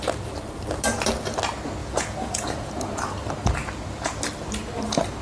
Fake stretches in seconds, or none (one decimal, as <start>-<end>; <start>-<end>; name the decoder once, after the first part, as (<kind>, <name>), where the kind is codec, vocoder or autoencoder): 1.8-2.7 (vocoder, Vocos)